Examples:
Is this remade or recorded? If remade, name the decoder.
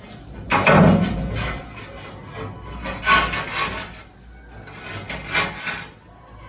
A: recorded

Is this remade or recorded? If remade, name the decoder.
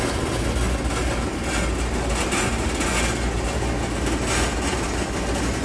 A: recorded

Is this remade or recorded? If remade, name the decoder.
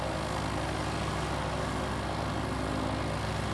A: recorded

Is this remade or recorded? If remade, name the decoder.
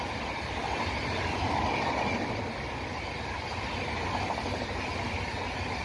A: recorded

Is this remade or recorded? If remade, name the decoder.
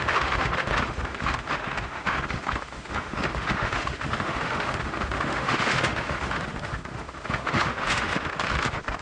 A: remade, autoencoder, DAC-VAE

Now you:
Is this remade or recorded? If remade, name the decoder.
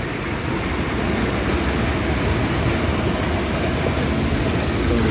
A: recorded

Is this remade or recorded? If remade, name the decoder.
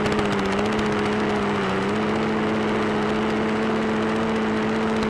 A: recorded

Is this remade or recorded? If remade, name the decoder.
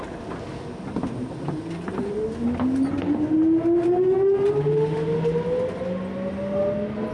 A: recorded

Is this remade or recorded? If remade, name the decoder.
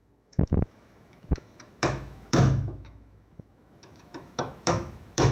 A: remade, autoencoder, DAC-VAE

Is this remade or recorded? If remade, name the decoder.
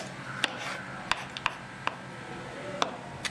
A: recorded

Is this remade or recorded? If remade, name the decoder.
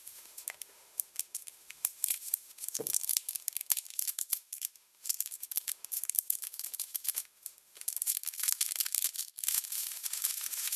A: remade, autoencoder, DAC-VAE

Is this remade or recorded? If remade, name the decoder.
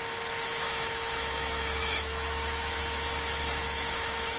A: remade, autoencoder, DAC-VAE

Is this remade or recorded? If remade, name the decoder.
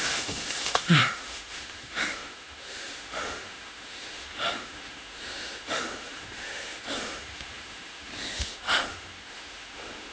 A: remade, autoencoder, DAC-VAE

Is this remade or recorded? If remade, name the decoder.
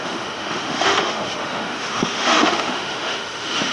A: remade, autoencoder, DAC-VAE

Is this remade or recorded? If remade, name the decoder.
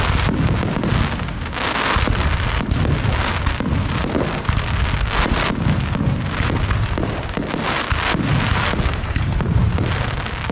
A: recorded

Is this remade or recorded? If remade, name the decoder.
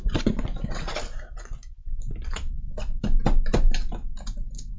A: recorded